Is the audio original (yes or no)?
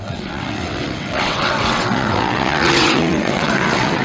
no